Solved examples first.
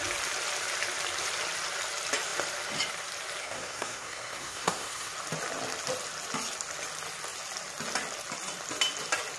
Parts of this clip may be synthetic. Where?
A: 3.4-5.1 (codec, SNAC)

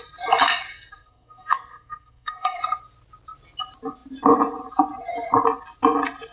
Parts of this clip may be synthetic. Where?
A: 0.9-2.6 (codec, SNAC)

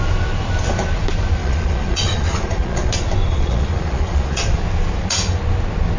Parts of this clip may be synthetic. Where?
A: 1.4-2.9 (vocoder, Vocos); 3.3-4.6